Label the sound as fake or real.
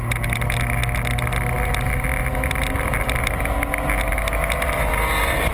real